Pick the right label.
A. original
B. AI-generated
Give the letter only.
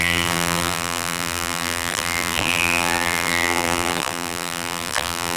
B